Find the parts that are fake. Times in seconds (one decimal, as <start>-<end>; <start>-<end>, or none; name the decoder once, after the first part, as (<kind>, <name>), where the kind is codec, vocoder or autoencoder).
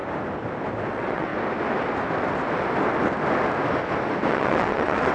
0.9-1.3 (vocoder, WaveNeXt); 4.3-5.1